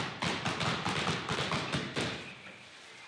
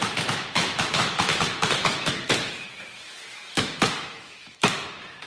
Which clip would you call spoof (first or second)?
second